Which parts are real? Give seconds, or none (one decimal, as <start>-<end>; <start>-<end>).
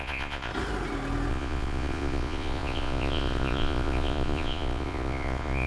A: 0.5-1.3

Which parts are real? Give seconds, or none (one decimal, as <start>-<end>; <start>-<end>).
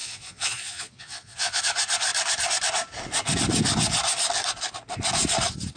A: 1.6-5.8